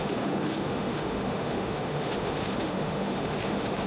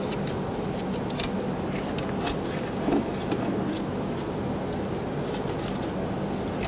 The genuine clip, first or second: second